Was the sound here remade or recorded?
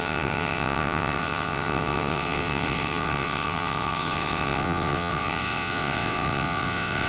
remade